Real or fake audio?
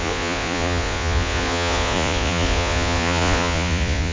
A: fake